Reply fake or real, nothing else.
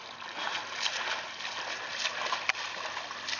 real